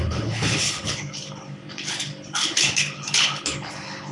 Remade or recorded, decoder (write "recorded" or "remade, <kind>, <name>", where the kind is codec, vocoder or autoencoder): remade, codec, HILCodec